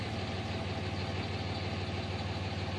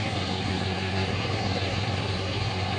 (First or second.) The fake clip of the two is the second